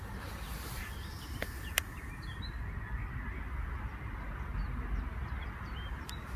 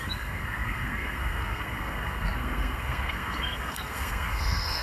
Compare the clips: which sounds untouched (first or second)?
first